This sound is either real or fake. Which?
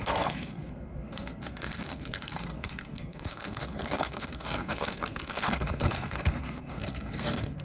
fake